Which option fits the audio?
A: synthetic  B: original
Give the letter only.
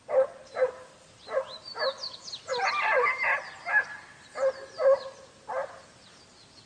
B